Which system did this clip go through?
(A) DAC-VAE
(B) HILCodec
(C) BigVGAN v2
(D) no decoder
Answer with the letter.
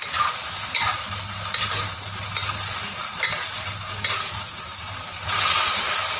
D